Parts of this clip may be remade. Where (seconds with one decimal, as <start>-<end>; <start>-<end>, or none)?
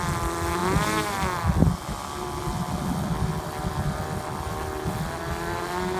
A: none